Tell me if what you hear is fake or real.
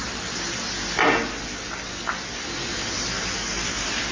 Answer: real